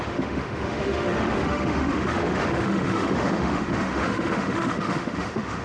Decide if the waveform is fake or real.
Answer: fake